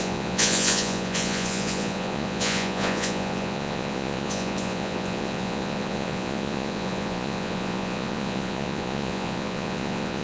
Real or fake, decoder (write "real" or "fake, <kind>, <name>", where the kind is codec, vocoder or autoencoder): fake, vocoder, Vocos